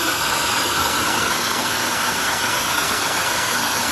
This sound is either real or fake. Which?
fake